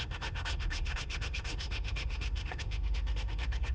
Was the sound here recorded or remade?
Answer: remade